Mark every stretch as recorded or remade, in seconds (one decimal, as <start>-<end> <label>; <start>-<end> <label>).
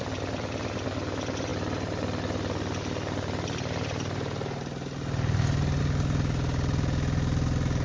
0.0-7.8 recorded